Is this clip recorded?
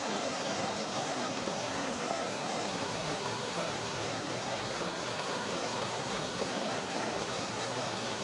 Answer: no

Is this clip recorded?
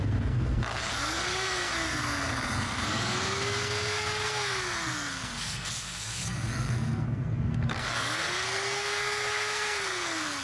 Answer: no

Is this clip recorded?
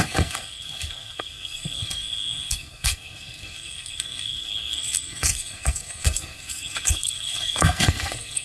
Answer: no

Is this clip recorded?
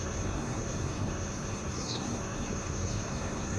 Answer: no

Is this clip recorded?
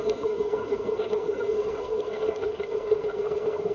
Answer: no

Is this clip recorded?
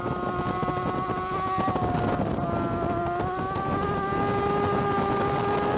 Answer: yes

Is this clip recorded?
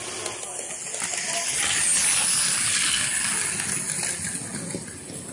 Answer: yes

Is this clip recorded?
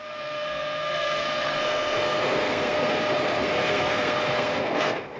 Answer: no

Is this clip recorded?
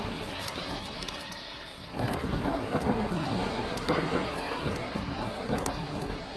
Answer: no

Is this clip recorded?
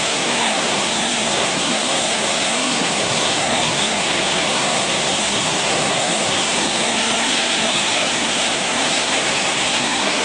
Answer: no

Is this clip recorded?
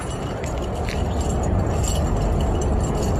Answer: yes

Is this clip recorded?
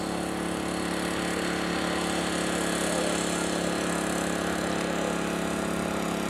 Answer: yes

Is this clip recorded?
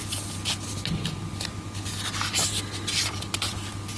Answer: yes